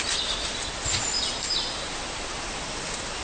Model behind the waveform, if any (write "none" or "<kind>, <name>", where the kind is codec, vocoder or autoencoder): none